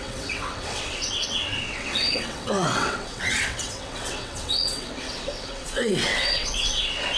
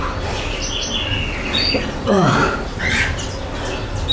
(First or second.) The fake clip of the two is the first